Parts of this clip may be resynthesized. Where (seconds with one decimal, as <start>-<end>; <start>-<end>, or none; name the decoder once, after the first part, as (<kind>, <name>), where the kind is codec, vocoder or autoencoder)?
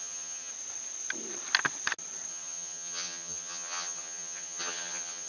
0.0-0.5 (vocoder, HiFi-GAN); 2.3-5.3